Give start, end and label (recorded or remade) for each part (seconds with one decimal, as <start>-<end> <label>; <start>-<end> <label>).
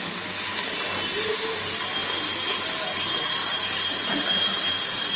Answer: 0.0-5.2 recorded